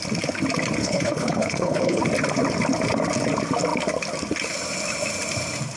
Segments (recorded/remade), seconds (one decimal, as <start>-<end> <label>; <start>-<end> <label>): 0.0-0.8 recorded; 0.8-2.0 remade; 2.0-5.8 recorded